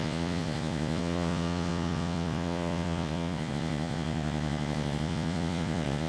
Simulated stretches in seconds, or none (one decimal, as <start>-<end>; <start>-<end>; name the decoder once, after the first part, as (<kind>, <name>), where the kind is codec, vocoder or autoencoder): 0.0-6.1 (vocoder, Vocos)